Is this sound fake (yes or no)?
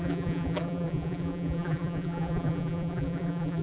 yes